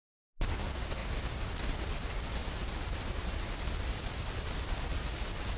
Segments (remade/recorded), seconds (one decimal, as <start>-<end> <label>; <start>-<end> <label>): 0.0-5.6 recorded